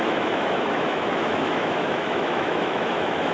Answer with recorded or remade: remade